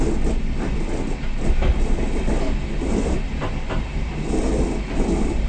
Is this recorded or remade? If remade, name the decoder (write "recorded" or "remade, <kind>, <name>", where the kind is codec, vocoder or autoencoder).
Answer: recorded